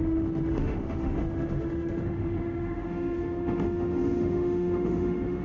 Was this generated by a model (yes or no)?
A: yes